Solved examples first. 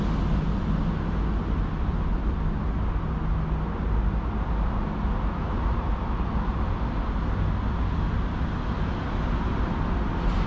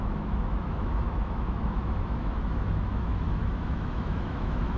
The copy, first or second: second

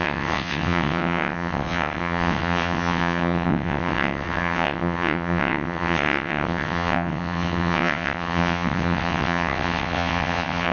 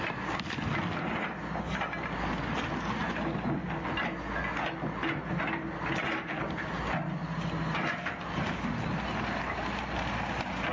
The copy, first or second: first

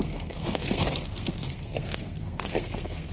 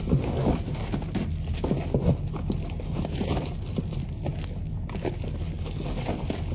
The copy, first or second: first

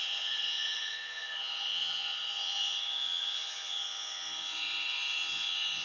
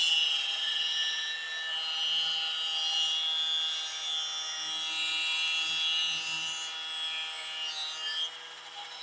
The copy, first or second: first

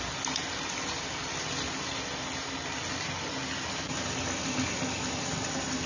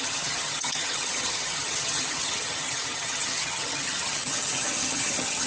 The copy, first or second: second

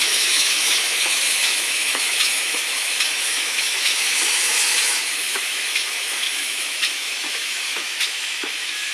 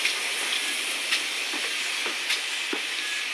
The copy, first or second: first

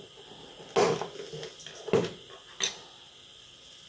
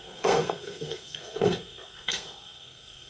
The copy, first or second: second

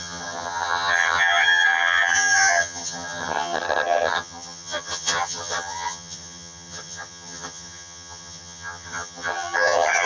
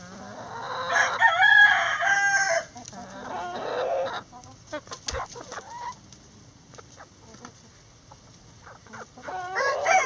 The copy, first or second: first